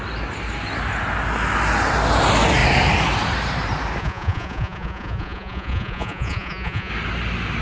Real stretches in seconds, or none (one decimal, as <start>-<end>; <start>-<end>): 0.0-4.0; 6.9-7.6